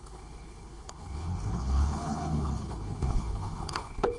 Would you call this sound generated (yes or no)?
yes